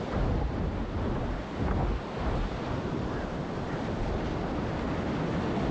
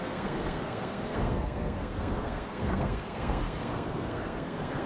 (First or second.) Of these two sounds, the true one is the first